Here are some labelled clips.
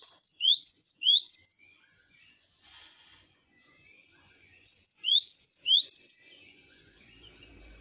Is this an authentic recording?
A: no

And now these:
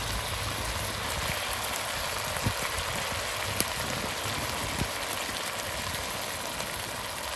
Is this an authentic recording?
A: yes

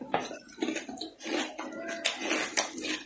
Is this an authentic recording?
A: yes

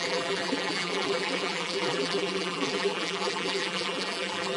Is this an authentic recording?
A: no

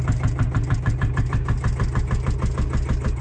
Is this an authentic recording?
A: yes